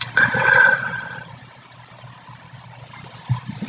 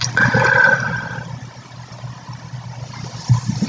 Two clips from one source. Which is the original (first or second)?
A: second